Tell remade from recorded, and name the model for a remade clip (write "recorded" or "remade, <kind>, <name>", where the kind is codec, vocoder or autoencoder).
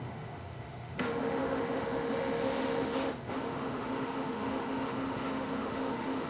remade, autoencoder, DAC-VAE